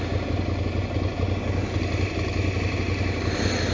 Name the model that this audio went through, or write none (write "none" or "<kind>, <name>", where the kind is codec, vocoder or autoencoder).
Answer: none